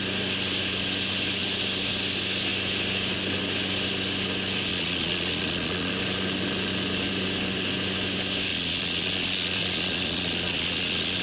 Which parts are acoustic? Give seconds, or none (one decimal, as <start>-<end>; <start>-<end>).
0.0-4.7; 5.9-8.5